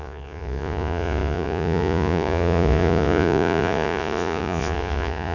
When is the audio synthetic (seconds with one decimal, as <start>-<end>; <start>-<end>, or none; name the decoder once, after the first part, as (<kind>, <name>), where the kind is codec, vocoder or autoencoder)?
0.0-5.3 (vocoder, Vocos)